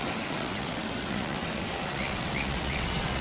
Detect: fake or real fake